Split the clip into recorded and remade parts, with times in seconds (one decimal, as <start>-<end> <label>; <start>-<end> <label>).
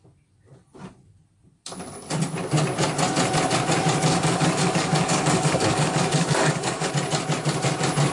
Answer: 0.0-4.1 recorded; 4.1-6.9 remade; 6.9-8.1 recorded